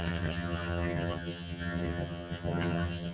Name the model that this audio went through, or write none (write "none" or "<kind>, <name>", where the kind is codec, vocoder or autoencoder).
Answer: vocoder, HiFi-GAN